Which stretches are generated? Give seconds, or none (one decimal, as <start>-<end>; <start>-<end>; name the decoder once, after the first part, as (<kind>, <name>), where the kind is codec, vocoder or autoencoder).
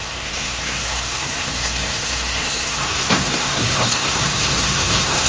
0.0-5.3 (codec, SNAC)